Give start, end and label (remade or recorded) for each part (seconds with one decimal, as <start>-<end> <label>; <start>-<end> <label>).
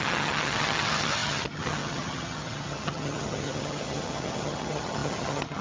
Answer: 0.0-5.6 remade